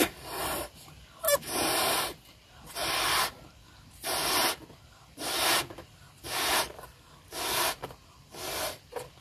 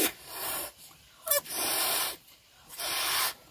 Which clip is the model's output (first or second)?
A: second